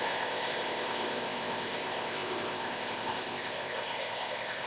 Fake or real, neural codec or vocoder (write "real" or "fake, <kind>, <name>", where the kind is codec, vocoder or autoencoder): fake, codec, ZipCodec